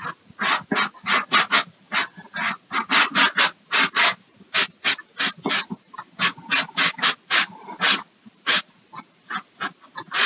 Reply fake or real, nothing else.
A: real